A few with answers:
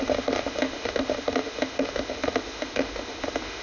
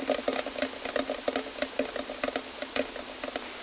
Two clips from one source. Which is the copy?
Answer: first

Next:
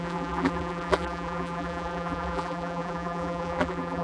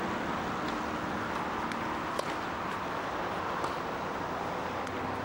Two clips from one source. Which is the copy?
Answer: first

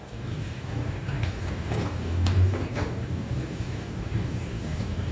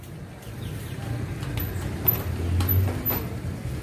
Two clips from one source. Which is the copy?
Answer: first